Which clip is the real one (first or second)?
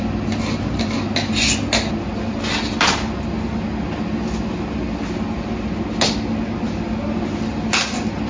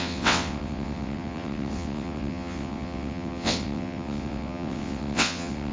first